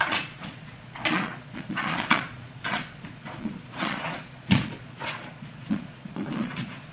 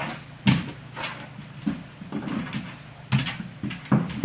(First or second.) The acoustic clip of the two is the second